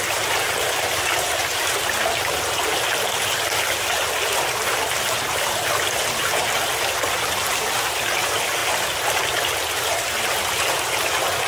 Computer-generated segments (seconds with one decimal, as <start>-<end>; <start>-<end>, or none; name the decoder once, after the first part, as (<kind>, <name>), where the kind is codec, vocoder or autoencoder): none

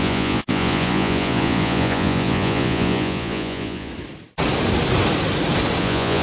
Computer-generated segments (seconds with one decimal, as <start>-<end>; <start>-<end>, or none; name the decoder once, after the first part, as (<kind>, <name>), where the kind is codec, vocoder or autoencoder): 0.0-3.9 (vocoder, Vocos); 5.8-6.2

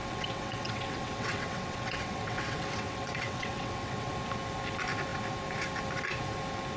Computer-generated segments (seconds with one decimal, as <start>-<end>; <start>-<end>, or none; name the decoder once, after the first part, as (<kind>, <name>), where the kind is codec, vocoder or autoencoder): 0.0-4.1 (vocoder, WaveNeXt)